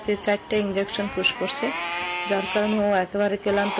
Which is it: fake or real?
real